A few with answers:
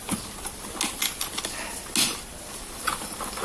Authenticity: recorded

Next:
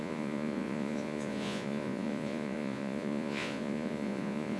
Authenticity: remade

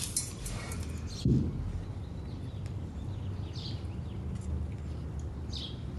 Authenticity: recorded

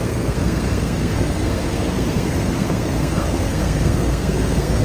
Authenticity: remade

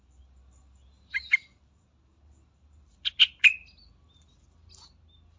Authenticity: recorded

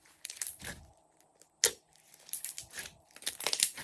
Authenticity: recorded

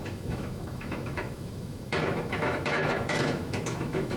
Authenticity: remade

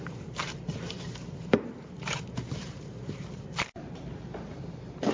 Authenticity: remade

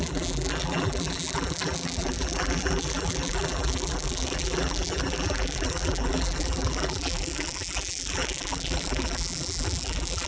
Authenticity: remade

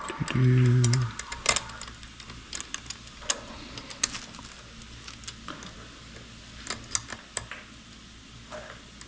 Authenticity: recorded